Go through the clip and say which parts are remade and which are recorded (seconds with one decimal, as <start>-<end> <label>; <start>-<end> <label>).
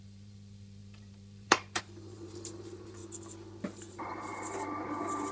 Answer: 0.0-3.0 remade; 3.0-3.9 recorded; 3.9-5.3 remade